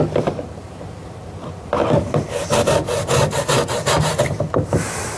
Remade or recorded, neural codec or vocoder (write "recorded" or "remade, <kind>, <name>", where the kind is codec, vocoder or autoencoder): recorded